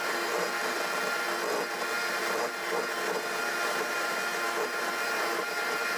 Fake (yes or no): no